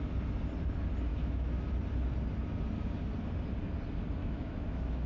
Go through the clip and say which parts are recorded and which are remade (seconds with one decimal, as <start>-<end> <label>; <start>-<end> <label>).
0.0-1.1 recorded; 1.1-1.7 remade; 1.7-4.2 recorded; 4.2-5.1 remade